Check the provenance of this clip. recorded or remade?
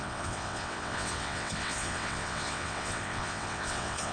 remade